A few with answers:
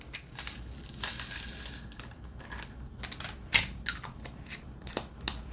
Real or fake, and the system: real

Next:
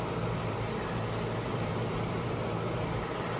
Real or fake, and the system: fake, vocoder, BigVGAN v2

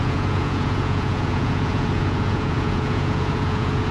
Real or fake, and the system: fake, vocoder, Vocos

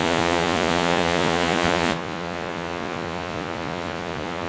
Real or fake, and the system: fake, vocoder, Vocos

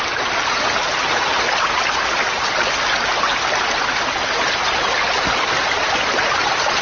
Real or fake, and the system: real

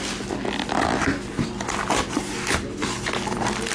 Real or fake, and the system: real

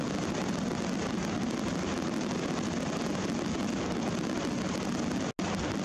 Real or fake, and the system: real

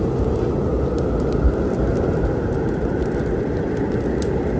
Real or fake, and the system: real